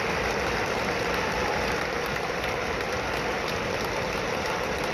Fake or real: real